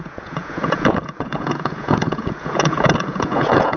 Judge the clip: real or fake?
fake